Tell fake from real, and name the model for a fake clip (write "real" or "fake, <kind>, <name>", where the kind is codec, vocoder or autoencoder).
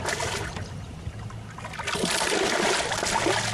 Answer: real